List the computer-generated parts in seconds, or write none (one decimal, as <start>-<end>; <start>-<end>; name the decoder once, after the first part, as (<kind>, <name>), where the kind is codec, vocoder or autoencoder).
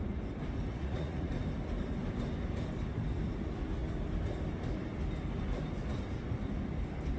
0.7-1.3 (vocoder, Vocos)